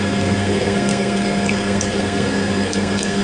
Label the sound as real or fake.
fake